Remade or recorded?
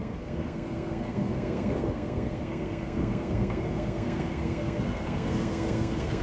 remade